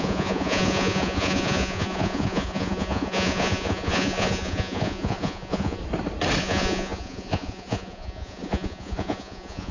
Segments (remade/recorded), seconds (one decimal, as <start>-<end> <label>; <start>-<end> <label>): 0.0-5.8 remade; 5.8-6.4 recorded; 6.4-9.7 remade